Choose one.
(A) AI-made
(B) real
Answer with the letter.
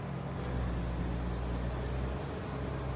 B